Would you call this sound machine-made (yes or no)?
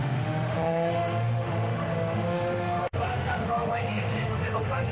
yes